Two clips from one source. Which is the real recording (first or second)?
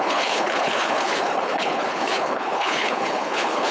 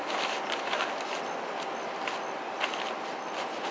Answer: second